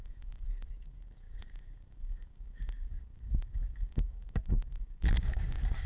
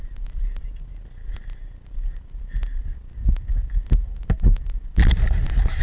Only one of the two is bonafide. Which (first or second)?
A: second